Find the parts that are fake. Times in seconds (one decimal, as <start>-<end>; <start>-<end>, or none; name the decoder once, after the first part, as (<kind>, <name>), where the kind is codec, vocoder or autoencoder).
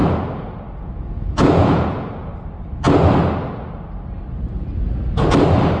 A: 0.8-2.3 (vocoder, Vocos)